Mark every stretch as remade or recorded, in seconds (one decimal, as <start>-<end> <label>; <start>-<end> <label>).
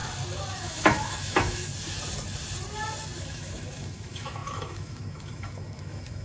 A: 0.0-0.6 recorded; 0.6-1.7 remade; 1.7-3.2 recorded; 3.2-6.2 remade